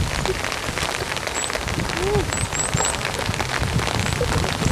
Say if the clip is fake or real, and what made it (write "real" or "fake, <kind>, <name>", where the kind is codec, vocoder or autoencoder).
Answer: real